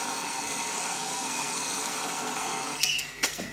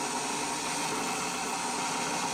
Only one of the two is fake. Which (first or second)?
first